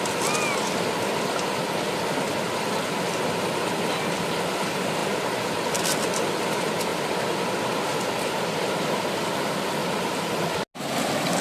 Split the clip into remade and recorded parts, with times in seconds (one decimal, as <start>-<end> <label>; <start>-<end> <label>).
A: 0.0-9.8 recorded; 9.8-10.3 remade; 10.3-11.4 recorded